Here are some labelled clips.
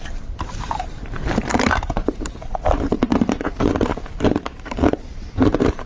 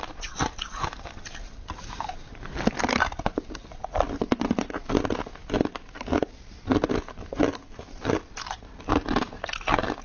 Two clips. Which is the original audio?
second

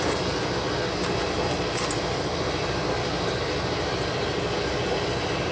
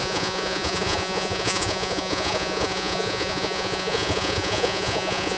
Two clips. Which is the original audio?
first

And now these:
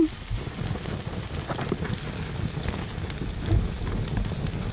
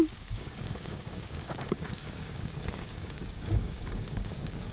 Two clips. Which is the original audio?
first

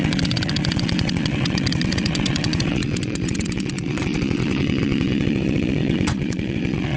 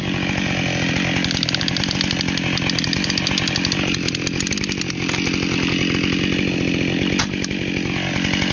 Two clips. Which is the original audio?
second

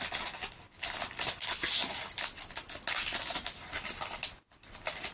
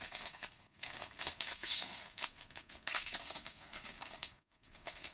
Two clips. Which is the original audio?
first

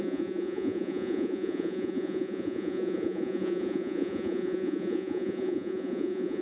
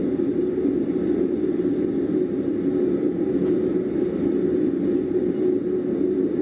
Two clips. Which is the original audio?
second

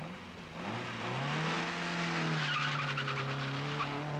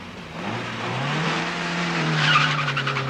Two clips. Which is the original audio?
first